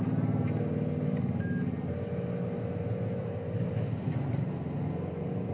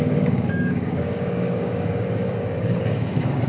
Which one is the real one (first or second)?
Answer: first